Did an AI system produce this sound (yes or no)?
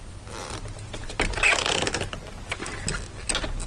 no